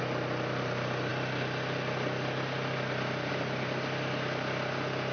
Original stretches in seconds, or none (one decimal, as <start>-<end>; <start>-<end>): 0.0-5.1